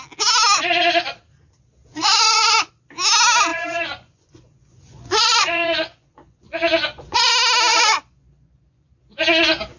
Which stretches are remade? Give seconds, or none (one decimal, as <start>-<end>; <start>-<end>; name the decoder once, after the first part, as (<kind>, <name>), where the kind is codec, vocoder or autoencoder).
1.9-2.7 (vocoder, Vocos); 3.5-7.3; 7.7-8.9

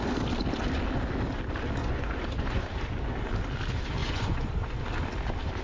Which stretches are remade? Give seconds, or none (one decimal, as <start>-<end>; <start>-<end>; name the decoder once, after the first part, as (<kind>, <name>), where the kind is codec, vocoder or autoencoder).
1.8-2.6 (vocoder, Vocos); 4.0-4.8

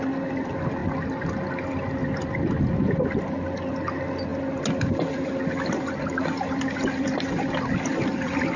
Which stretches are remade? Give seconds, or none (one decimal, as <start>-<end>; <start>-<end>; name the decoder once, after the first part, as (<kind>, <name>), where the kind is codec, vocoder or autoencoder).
none

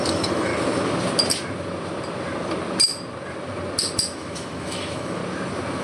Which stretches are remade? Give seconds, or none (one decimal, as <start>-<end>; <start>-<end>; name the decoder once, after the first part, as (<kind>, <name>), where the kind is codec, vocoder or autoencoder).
0.0-0.5 (autoencoder, DAC-VAE); 4.0-5.2

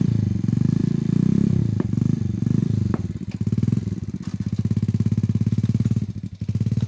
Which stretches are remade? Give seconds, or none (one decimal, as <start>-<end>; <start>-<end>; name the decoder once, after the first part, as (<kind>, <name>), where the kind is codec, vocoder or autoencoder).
none